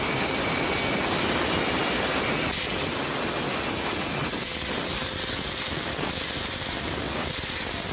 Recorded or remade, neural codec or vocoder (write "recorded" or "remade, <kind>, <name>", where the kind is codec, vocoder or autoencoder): recorded